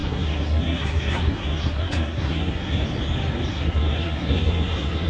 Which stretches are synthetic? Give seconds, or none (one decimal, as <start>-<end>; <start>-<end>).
0.0-2.8; 3.5-5.1